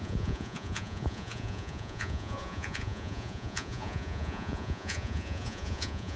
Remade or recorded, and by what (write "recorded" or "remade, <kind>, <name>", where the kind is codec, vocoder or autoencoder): remade, vocoder, Vocos